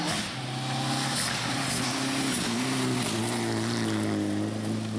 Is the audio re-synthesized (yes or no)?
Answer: no